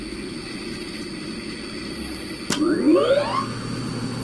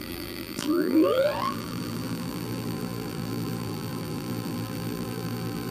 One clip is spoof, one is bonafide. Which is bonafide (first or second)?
first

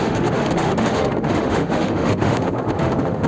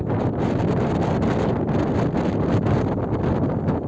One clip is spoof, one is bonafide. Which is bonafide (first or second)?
second